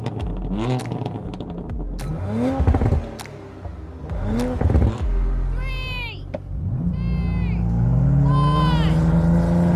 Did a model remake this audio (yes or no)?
no